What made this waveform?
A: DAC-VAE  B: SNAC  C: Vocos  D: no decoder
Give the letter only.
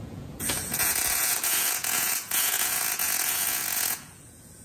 C